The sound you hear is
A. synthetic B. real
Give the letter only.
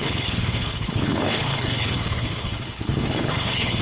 A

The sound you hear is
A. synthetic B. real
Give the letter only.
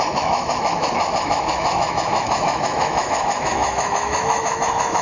A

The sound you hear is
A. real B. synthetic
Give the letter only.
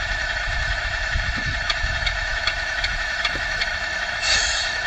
B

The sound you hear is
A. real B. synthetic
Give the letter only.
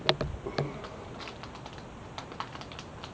A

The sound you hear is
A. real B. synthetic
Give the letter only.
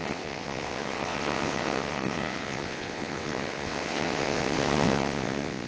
B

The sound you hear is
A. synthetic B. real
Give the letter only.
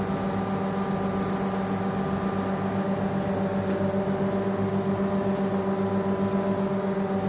B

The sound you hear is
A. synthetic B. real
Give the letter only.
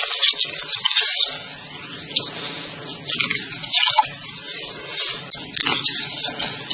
B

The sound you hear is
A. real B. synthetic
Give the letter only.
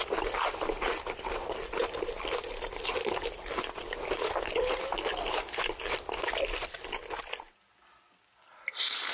A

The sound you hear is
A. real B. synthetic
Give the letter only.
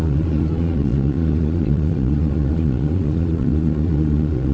B